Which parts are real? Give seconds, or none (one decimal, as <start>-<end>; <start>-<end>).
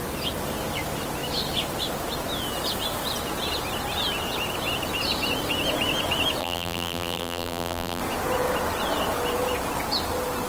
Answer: 0.0-6.4; 8.0-10.5